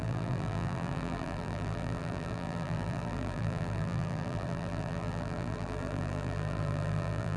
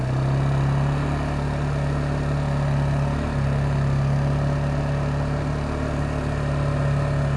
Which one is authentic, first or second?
second